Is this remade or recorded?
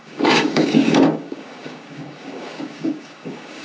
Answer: remade